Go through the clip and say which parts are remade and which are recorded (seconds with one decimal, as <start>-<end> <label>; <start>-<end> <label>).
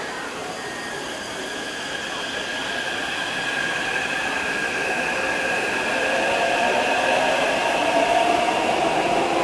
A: 0.0-0.4 remade; 0.4-1.1 recorded; 1.1-7.6 remade; 7.6-8.2 recorded; 8.2-9.4 remade